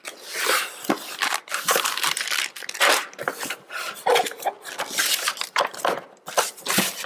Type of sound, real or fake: real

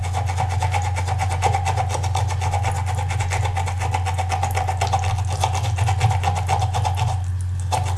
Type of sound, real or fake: real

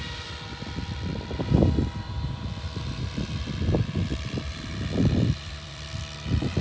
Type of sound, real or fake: fake